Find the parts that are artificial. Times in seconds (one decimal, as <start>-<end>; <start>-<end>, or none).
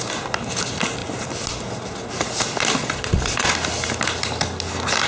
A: 2.8-3.5